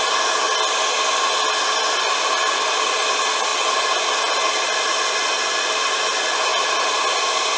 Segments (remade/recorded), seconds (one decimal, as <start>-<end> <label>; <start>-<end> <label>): 0.0-7.6 recorded